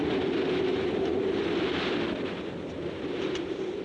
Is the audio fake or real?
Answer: fake